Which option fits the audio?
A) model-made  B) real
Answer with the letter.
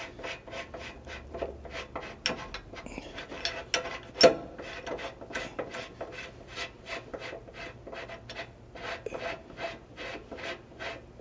B